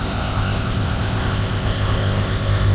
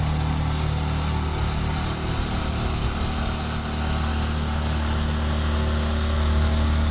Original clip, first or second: second